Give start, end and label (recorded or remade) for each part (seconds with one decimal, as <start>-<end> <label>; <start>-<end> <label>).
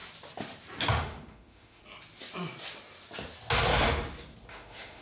0.0-0.9 recorded; 0.9-1.8 remade; 1.8-4.5 recorded; 4.5-5.0 remade